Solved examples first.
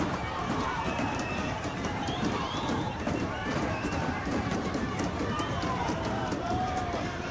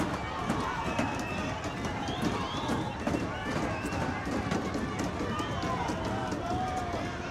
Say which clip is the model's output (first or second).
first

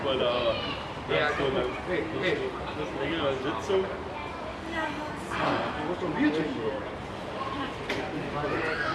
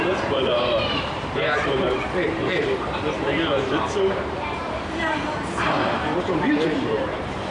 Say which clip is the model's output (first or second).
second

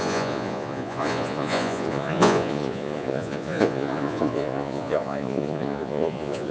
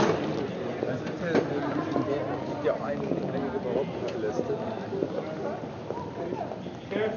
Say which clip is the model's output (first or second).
first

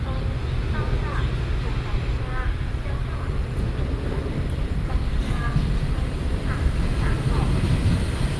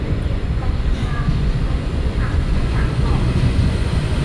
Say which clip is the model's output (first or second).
second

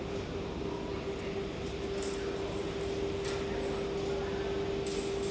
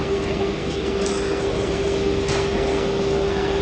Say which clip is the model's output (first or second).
second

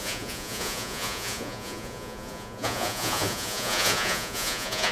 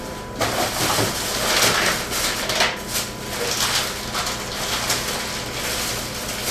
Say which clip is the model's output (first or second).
first